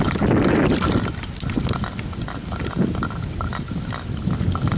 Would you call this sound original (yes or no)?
yes